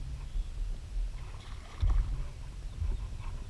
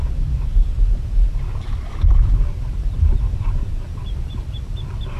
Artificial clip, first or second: second